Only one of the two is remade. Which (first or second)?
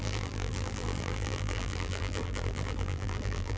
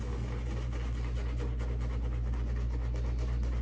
first